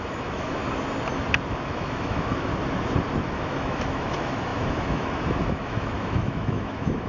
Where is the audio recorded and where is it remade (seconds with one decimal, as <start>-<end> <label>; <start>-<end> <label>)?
0.0-0.6 remade; 0.6-1.5 recorded; 1.5-2.5 remade; 2.5-3.2 recorded; 3.2-7.1 remade